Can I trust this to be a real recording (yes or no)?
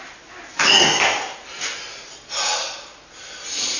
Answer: yes